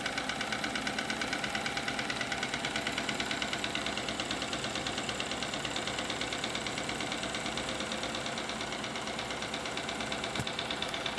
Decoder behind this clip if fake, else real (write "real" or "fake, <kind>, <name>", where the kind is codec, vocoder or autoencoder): real